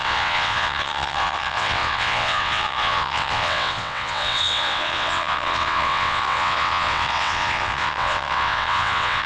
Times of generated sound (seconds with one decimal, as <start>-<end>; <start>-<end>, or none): 0.0-9.3